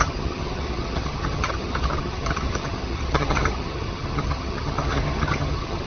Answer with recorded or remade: remade